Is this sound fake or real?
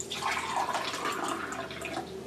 real